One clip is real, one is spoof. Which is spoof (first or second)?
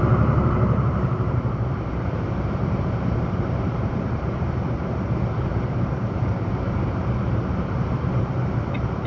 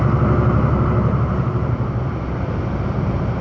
first